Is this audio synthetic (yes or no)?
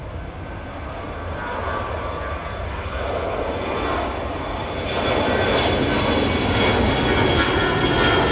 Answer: no